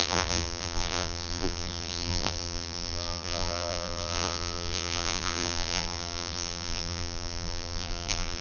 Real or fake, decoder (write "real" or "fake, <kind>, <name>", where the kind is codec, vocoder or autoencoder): fake, vocoder, BigVGAN v2